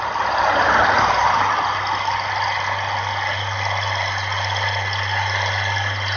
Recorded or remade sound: recorded